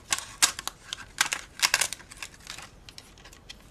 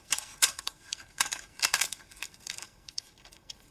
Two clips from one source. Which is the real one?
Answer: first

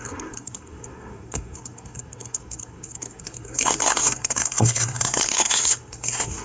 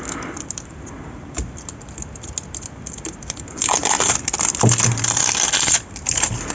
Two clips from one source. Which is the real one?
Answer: second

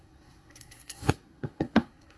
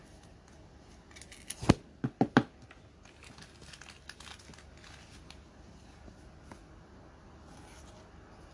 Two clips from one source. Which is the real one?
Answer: second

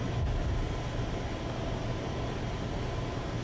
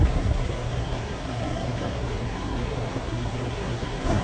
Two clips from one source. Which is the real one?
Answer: first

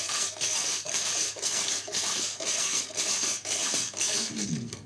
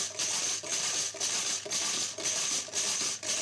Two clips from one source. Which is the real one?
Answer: second